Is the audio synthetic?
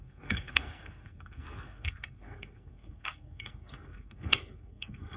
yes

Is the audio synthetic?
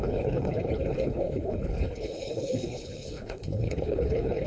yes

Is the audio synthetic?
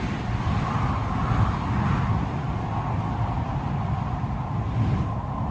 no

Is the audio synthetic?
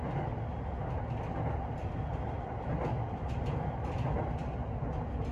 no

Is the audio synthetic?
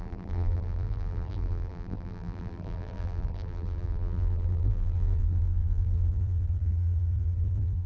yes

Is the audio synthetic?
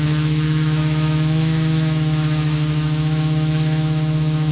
yes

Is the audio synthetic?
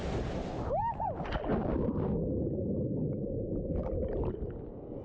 no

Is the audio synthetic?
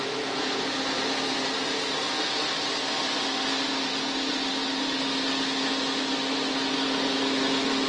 no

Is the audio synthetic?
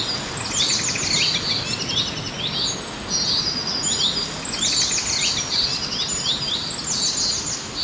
no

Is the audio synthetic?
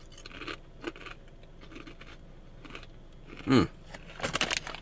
no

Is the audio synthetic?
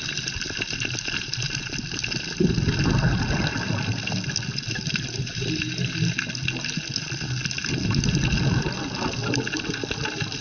no